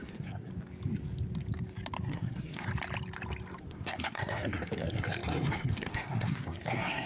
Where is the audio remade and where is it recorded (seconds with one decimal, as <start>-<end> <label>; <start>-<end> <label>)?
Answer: 0.0-0.5 remade; 0.5-2.1 recorded; 2.1-2.7 remade; 2.7-3.6 recorded; 3.6-7.1 remade